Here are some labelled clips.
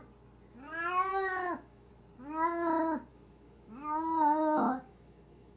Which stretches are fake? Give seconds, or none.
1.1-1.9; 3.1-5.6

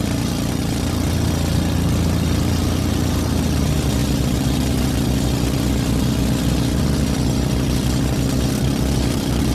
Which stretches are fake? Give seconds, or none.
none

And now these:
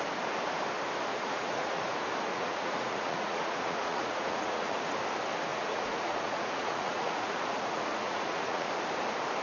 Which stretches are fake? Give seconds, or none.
1.1-1.8; 2.3-4.8; 5.5-8.7